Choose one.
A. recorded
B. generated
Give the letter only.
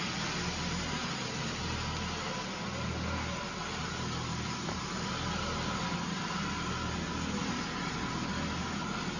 A